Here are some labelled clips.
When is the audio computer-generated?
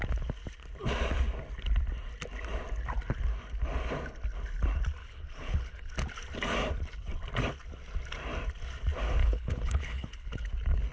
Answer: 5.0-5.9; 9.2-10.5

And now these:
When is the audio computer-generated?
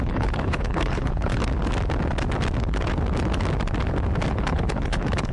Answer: 0.0-1.4; 4.3-5.3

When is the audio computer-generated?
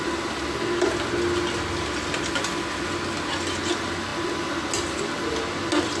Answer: none